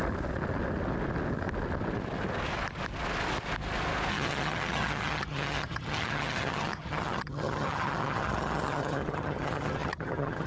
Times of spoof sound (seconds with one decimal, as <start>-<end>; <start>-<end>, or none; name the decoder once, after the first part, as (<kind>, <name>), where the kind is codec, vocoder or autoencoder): 4.1-10.5 (vocoder, HiFi-GAN)